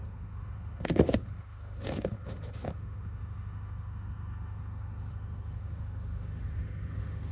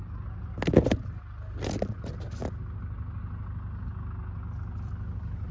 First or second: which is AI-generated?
first